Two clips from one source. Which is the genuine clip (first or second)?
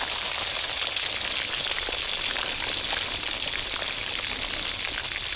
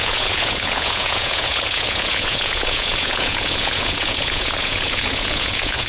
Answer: first